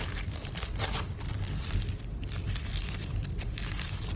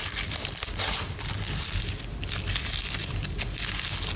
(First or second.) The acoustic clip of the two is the second